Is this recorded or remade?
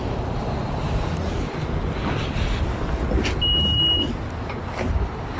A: recorded